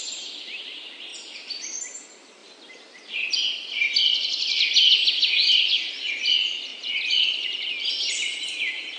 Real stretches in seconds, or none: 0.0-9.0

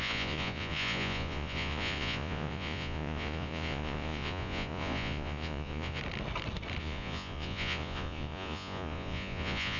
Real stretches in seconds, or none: 6.0-6.8

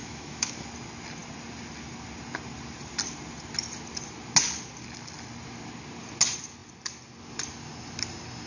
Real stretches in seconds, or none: 0.5-8.5

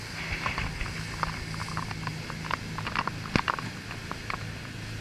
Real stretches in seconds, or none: 0.0-5.0

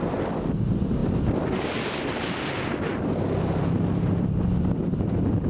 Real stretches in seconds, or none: 0.0-5.5